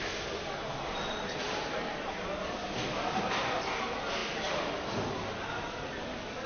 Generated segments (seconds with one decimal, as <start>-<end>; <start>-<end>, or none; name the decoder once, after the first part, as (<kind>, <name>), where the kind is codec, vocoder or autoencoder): none